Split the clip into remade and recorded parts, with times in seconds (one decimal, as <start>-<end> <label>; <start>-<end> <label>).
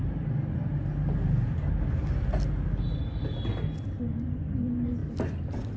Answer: 0.0-5.8 recorded